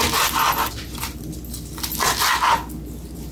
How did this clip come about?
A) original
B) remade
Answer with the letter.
A